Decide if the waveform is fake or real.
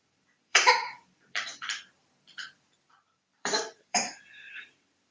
fake